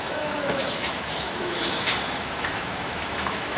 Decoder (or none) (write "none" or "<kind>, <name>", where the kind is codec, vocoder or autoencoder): autoencoder, DAC-VAE